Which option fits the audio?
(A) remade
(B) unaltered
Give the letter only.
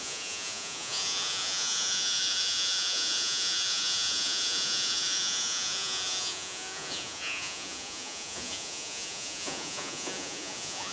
A